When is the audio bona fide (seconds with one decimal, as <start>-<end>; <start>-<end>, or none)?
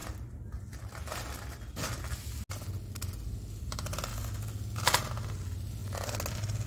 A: 0.0-6.7